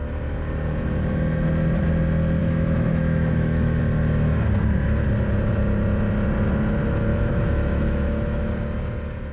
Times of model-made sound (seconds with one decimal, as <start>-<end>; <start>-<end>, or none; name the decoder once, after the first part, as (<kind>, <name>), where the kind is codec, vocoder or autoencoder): 2.4-3.8 (autoencoder, DAC-VAE); 7.1-8.5